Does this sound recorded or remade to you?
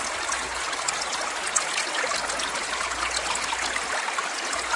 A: recorded